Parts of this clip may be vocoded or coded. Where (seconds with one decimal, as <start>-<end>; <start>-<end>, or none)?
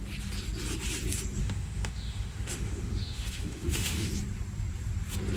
1.4-4.1